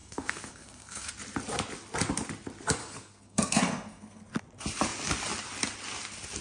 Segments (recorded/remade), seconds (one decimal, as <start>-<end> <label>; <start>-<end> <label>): 0.0-1.1 remade; 1.1-2.8 recorded; 2.8-4.2 remade; 4.2-6.4 recorded